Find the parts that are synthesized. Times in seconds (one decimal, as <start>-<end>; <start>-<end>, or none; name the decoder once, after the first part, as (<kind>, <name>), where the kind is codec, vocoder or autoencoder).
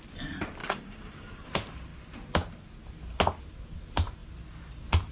0.6-1.5 (codec, DAC)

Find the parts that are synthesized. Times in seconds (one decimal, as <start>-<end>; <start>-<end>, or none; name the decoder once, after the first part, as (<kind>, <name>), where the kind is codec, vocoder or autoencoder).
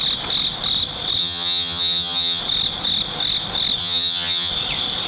1.2-2.4 (vocoder, HiFi-GAN); 3.8-4.5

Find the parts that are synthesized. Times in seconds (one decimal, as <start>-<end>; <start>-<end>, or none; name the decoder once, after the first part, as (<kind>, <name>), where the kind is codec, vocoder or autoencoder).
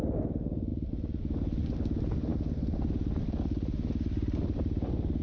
none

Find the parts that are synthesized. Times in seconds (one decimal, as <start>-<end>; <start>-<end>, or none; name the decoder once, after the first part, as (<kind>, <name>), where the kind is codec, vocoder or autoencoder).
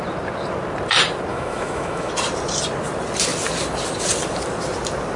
1.3-2.1 (autoencoder, DAC-VAE)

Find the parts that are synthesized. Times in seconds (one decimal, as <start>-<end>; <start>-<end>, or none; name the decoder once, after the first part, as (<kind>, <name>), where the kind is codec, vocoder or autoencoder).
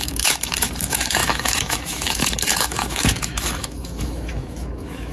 0.0-5.1 (autoencoder, DAC-VAE)